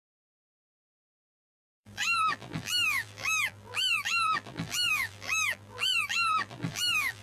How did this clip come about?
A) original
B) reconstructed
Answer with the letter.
B